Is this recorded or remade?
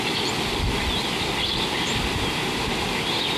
recorded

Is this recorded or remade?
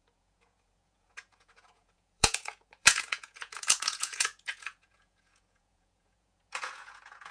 remade